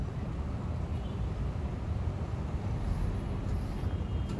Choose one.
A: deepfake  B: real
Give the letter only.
B